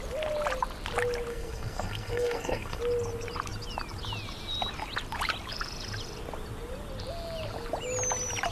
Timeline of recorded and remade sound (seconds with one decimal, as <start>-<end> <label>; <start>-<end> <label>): 0.0-1.3 recorded; 1.3-2.8 remade; 2.8-8.5 recorded